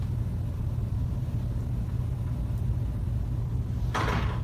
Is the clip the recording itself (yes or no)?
yes